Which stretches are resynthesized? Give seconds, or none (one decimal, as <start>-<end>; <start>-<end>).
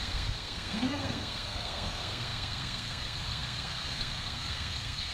0.0-5.1